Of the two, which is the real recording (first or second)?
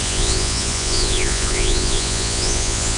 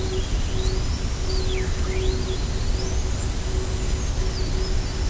second